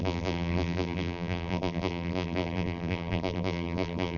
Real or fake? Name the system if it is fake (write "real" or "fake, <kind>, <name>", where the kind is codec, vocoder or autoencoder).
fake, vocoder, BigVGAN v2